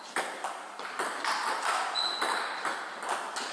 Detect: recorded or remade recorded